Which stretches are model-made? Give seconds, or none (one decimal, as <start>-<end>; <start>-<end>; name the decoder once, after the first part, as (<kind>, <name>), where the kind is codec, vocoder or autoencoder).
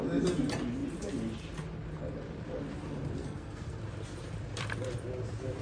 3.2-3.8 (codec, SNAC)